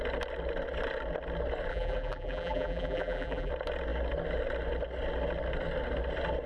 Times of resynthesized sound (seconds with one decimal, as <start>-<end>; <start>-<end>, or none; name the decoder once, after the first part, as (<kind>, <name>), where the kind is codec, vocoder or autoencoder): 1.7-3.5 (vocoder, BigVGAN v2)